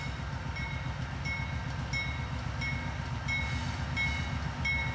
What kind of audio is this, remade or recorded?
recorded